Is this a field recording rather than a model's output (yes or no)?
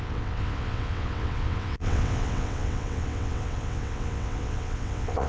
no